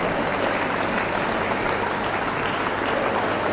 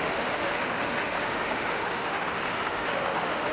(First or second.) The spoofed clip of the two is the second